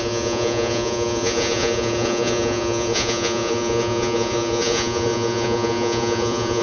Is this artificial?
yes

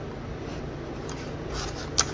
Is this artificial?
no